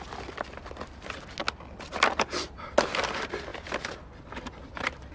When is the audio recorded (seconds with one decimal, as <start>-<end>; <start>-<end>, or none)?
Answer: 0.0-5.1